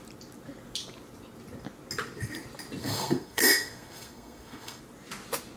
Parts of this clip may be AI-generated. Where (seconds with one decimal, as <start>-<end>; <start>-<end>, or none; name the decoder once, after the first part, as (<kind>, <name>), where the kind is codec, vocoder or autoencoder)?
2.8-4.8 (codec, SNAC)